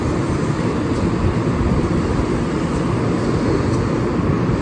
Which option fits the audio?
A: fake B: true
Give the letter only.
A